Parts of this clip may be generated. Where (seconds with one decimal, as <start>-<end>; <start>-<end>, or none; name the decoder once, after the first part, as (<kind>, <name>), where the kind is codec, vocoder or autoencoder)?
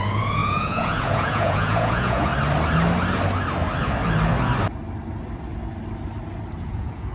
0.0-2.3 (vocoder, Vocos); 6.6-7.1